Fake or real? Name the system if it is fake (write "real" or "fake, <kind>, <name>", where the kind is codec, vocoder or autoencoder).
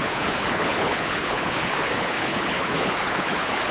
fake, codec, HILCodec